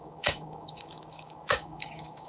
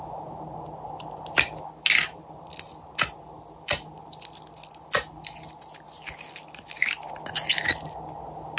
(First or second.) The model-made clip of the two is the first